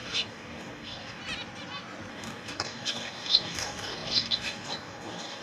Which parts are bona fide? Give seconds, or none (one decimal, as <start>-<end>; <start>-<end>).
1.2-2.1